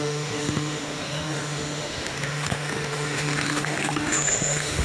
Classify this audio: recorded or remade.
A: remade